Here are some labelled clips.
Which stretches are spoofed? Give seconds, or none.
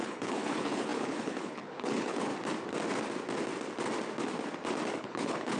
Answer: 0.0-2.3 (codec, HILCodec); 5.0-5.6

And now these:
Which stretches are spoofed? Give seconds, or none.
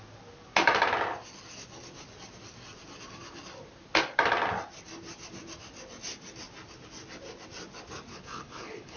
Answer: 8.1-9.0 (codec, HILCodec)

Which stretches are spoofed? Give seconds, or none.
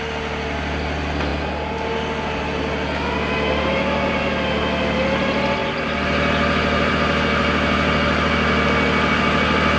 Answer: none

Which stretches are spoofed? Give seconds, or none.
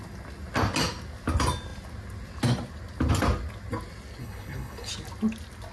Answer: 4.2-4.9 (codec, HILCodec)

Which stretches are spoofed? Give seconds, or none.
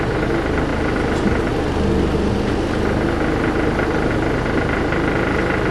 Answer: none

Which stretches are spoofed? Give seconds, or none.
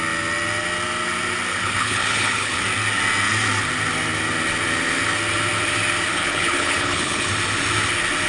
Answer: 1.5-2.6 (codec, HILCodec); 6.1-7.3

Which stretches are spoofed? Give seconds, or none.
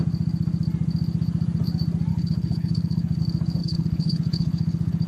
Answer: 2.1-3.2 (codec, HILCodec); 3.6-5.1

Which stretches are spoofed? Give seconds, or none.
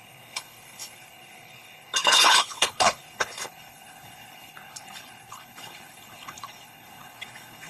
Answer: 0.0-7.7 (codec, HILCodec)